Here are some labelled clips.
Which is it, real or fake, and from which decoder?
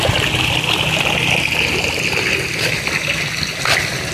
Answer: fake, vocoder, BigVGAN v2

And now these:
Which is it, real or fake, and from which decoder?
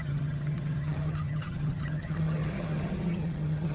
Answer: fake, vocoder, HiFi-GAN